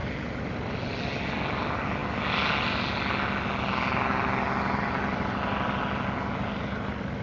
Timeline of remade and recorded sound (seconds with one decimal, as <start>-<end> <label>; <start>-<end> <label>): 0.0-7.2 recorded

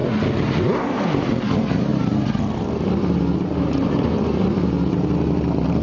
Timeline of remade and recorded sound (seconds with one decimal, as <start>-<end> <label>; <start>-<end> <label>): 0.0-5.8 recorded

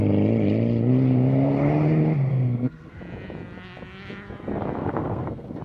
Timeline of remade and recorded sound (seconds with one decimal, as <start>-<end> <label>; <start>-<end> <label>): 0.0-2.3 recorded; 2.3-3.0 remade; 3.0-4.8 recorded; 4.8-5.6 remade

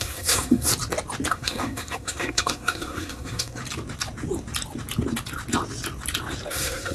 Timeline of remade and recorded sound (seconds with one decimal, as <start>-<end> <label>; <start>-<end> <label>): 0.0-0.7 remade; 0.7-1.3 recorded; 1.3-3.6 remade; 3.6-6.5 recorded; 6.5-6.9 remade

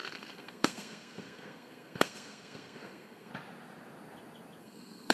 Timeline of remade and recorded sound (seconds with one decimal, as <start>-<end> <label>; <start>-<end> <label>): 0.0-3.3 remade; 3.3-4.6 recorded; 4.6-5.1 remade

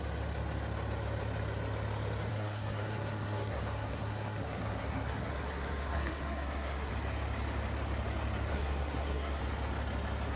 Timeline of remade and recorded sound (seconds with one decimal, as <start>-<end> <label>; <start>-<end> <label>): 0.0-2.3 recorded; 2.3-6.9 remade; 6.9-8.5 recorded; 8.5-9.4 remade; 9.4-10.4 recorded